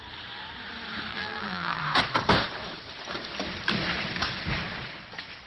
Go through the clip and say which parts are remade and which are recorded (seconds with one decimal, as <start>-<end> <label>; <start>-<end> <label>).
0.0-1.1 recorded; 1.1-1.8 remade; 1.8-5.5 recorded